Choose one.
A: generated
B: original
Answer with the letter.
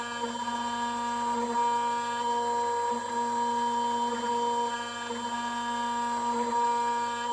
B